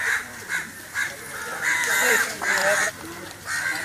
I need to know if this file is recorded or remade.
remade